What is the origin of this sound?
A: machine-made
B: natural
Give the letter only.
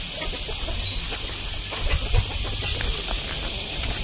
B